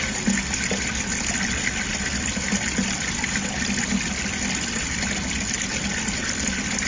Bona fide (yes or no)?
yes